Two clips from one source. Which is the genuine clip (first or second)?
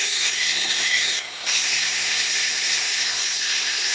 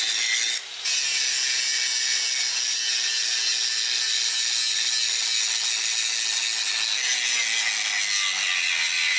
second